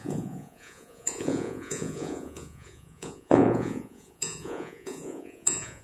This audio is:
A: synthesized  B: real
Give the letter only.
A